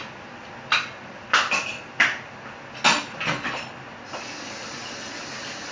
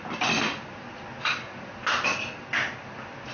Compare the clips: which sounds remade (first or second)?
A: second